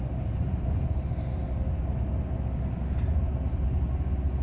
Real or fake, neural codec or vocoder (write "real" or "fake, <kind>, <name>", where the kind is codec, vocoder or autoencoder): real